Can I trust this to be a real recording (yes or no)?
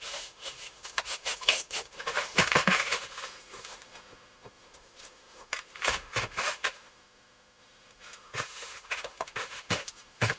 no